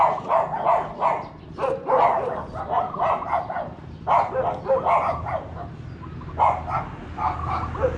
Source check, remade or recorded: recorded